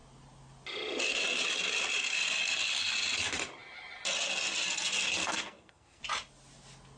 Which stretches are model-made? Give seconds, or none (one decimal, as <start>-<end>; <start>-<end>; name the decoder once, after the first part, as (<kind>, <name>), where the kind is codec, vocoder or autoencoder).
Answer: 5.2-6.0 (codec, SNAC)